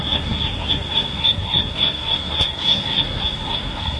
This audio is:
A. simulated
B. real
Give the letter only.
A